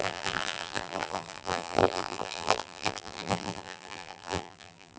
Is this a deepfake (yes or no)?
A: yes